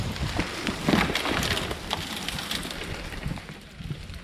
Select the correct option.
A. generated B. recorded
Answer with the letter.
B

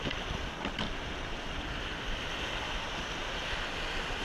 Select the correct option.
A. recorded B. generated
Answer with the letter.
A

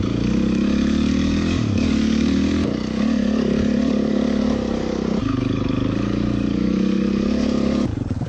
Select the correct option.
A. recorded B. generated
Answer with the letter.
B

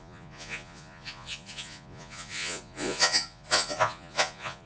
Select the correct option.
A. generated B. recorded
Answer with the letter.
A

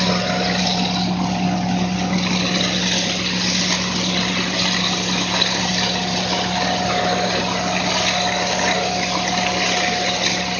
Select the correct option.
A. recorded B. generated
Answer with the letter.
A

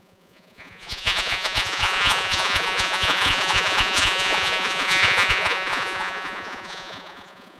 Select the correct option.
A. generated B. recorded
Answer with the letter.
A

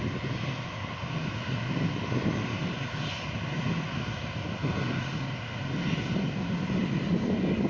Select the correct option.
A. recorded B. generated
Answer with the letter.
A